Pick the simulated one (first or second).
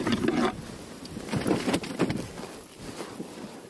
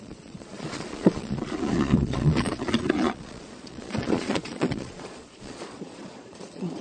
second